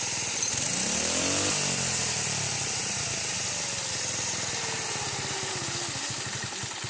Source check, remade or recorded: recorded